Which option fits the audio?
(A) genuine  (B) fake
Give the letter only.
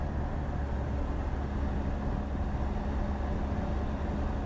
A